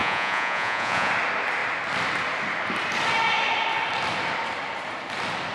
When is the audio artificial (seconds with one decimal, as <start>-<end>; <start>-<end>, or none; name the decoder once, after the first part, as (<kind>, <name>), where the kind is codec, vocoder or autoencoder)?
0.0-1.1 (vocoder, Vocos)

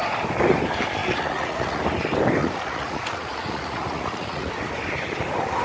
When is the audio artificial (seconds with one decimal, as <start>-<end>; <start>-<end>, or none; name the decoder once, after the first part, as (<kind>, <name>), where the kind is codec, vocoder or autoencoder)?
1.0-1.8 (vocoder, Vocos); 2.4-4.5

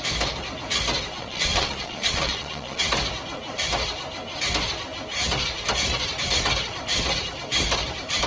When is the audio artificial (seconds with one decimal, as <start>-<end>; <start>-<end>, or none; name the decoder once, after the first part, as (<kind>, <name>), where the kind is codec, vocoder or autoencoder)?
1.2-2.9 (vocoder, Vocos)

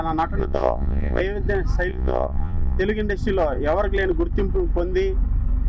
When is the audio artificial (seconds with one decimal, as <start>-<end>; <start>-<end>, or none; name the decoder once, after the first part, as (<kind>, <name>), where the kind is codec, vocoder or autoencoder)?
0.4-1.2 (vocoder, Vocos); 1.9-2.8

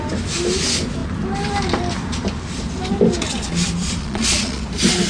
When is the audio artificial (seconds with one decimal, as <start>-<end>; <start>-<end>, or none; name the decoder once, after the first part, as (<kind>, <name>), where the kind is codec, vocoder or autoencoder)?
4.0-4.6 (vocoder, Vocos)

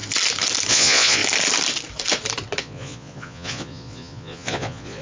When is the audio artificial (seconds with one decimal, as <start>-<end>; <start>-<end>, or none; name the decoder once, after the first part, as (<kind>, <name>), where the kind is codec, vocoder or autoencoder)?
0.7-1.2 (vocoder, Vocos); 2.6-5.0